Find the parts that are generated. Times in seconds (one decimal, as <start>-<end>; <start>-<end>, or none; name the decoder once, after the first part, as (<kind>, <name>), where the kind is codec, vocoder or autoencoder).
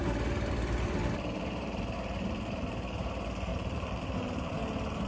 0.0-1.8 (vocoder, BigVGAN v2); 3.5-4.5